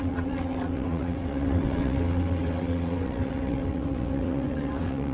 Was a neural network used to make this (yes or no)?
yes